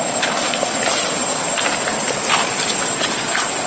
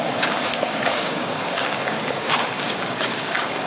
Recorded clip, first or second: first